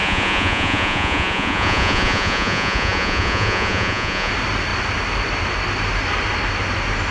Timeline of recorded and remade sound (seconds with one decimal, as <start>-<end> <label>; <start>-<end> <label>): 0.0-4.3 remade; 4.3-7.1 recorded